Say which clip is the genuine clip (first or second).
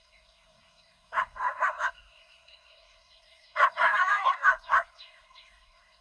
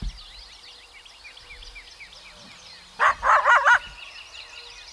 second